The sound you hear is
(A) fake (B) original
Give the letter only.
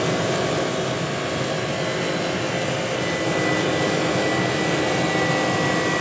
B